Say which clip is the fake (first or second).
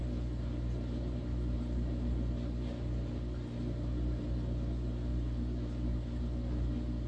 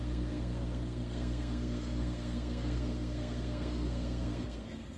second